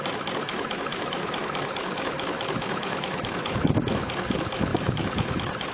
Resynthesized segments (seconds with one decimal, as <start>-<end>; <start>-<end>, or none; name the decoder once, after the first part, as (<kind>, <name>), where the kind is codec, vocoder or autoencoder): 0.5-3.8 (autoencoder, DAC-VAE); 4.7-5.7